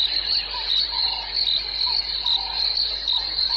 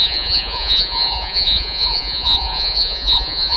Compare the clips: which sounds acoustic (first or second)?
first